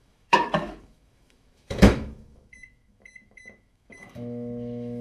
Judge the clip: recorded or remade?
remade